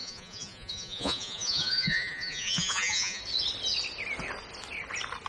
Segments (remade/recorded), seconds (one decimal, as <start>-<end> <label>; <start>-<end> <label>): 0.0-3.2 remade; 3.2-5.3 recorded